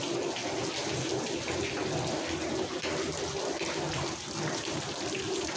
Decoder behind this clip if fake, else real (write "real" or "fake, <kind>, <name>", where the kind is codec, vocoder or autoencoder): real